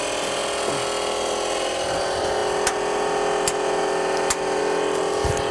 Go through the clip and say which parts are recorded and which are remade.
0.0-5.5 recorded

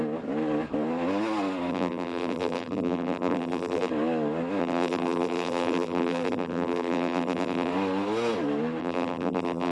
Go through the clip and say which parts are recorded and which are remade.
0.0-1.7 recorded; 1.7-3.9 remade; 3.9-4.6 recorded; 4.6-7.7 remade; 7.7-8.8 recorded; 8.8-9.7 remade